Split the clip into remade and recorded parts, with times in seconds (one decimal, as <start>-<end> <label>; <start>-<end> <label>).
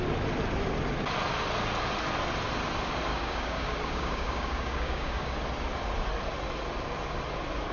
0.0-3.1 recorded; 3.1-5.3 remade; 5.3-7.7 recorded